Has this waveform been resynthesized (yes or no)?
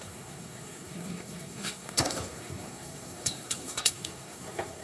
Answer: yes